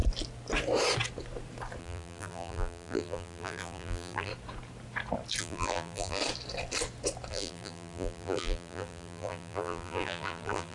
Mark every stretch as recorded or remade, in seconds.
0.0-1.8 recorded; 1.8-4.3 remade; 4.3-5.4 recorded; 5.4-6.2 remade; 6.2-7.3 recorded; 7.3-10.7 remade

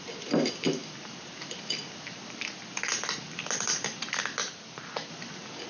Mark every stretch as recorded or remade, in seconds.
0.0-4.4 recorded; 4.4-5.1 remade; 5.1-5.7 recorded

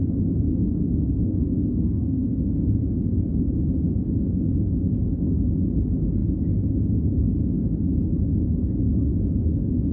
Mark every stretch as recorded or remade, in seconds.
0.0-0.5 recorded; 0.5-2.8 remade; 2.8-9.9 recorded

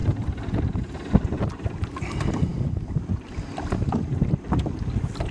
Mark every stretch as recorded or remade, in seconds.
0.0-5.3 recorded

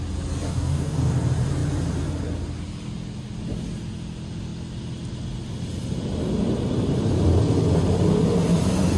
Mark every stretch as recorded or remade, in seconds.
0.0-0.5 recorded; 0.5-1.1 remade; 1.1-9.0 recorded